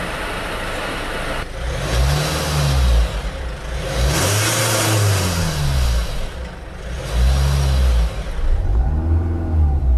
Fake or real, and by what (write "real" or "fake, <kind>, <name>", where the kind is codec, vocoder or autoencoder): real